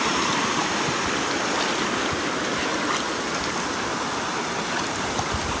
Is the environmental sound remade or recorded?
recorded